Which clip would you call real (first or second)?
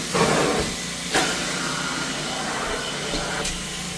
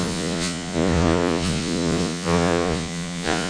first